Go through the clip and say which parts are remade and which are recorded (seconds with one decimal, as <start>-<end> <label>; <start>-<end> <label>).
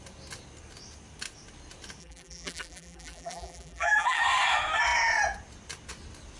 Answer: 0.0-2.0 recorded; 2.0-4.2 remade; 4.2-6.4 recorded